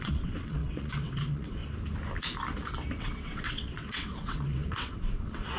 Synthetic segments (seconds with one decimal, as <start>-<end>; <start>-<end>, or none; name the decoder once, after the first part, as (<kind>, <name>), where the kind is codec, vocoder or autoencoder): 0.0-1.6 (vocoder, WaveNeXt); 3.0-5.6